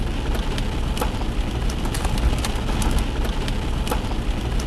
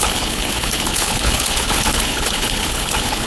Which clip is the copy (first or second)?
second